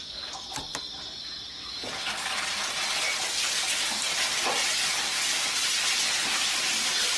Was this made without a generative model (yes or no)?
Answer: yes